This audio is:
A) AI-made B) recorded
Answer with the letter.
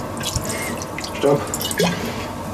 B